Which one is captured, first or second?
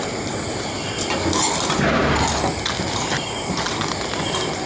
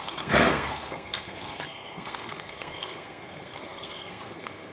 first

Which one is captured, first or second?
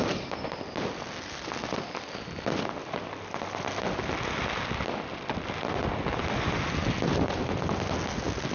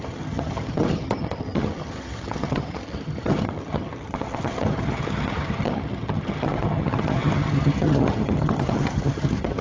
first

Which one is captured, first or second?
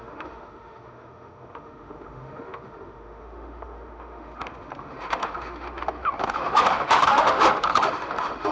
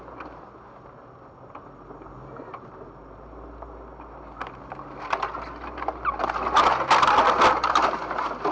second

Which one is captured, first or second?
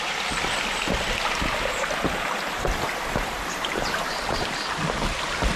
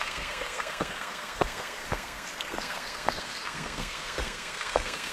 first